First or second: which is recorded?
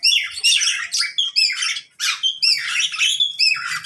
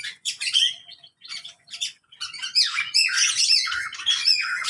first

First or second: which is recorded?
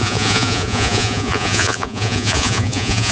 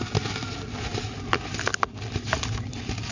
second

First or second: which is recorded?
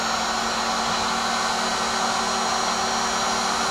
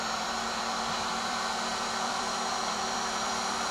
first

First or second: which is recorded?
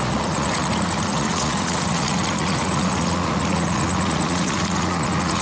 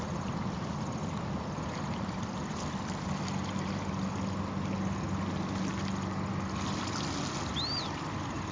second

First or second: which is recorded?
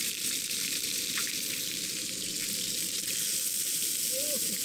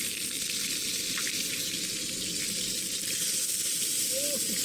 second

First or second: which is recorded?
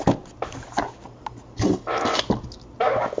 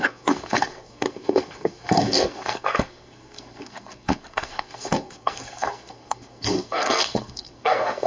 first